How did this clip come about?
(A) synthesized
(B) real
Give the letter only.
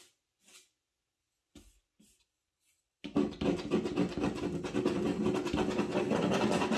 B